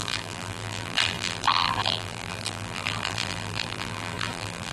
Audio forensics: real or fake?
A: fake